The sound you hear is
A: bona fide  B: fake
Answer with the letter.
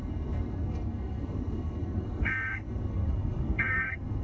B